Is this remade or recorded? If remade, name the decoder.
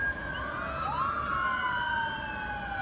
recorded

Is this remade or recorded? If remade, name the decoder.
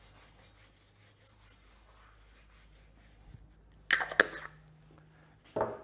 recorded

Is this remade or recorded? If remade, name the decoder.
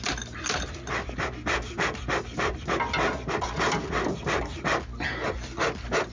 recorded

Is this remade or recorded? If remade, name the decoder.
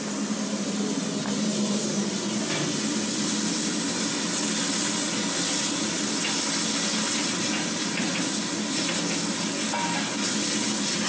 recorded